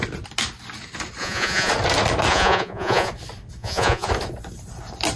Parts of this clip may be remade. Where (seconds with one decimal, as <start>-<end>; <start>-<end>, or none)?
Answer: 1.2-1.7; 2.3-3.1; 3.6-4.1